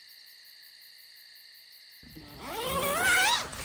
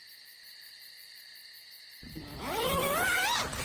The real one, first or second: first